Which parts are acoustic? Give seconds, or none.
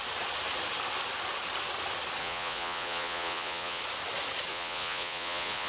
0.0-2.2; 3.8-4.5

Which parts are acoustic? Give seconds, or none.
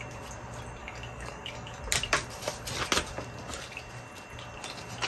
0.0-0.8; 1.8-5.1